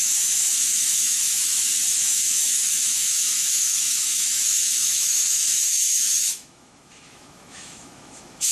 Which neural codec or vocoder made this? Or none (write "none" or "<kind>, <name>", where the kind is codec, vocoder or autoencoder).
autoencoder, DAC-VAE